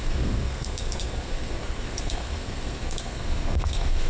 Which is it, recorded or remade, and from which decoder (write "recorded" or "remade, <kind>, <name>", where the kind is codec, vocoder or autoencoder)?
remade, codec, SNAC